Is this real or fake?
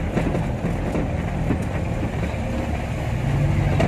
real